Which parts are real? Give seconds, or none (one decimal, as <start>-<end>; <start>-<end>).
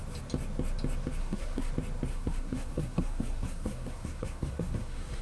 0.0-1.2; 1.7-2.1